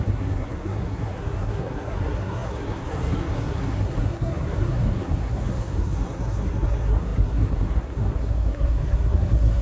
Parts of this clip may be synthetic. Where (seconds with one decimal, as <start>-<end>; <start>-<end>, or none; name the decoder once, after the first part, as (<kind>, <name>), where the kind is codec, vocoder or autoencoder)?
0.0-9.6 (codec, SNAC)